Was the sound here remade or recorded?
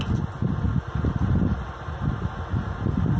recorded